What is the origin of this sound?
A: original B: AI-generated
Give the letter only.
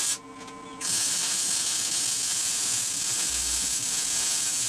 A